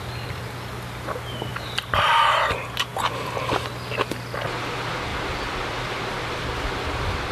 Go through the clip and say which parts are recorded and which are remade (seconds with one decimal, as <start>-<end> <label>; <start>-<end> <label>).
0.0-1.5 recorded; 1.5-2.2 remade; 2.2-2.9 recorded; 2.9-3.5 remade; 3.5-5.1 recorded; 5.1-6.0 remade; 6.0-7.3 recorded